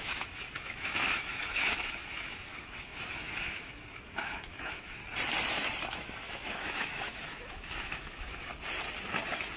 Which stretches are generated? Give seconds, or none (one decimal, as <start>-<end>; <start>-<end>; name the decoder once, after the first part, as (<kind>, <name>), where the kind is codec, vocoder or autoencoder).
0.0-5.0 (autoencoder, DAC-VAE); 5.8-8.5